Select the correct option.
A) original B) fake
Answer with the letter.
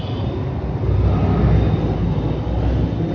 A